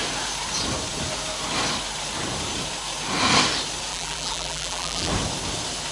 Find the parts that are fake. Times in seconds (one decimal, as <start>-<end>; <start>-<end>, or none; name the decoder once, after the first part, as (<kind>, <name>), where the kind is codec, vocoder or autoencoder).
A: 3.9-5.1 (vocoder, BigVGAN v2)